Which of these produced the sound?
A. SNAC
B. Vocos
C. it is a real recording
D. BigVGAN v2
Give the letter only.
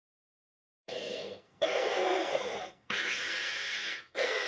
A